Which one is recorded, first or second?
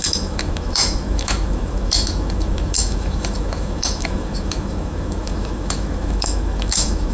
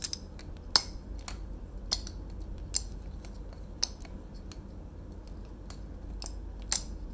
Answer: second